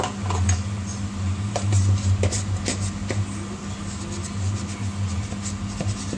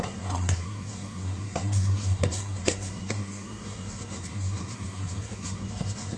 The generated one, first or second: second